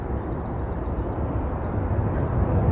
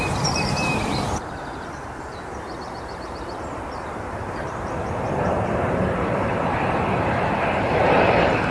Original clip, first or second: first